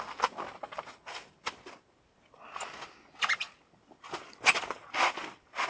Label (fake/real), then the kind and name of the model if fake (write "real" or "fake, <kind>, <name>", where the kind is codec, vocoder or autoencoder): real